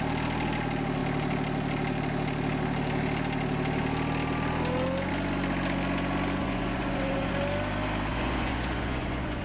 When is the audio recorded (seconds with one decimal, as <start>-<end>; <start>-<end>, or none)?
0.0-6.4; 7.3-8.1